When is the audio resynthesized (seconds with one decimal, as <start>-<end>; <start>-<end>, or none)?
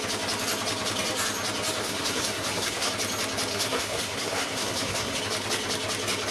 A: 1.8-2.9; 3.5-5.2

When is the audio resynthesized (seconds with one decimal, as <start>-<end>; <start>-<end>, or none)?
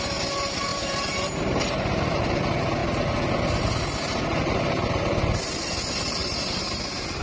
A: 0.7-2.2; 6.2-7.2